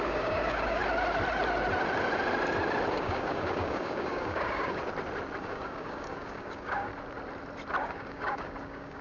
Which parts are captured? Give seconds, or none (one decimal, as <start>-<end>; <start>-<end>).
0.8-2.9; 4.8-5.4; 6.9-7.8